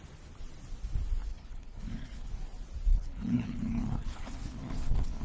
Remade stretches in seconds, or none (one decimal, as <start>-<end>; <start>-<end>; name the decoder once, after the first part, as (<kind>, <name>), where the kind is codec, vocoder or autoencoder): 1.3-2.3 (codec, HILCodec); 2.9-5.2